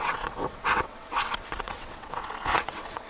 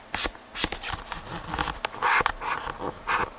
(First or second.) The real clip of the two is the second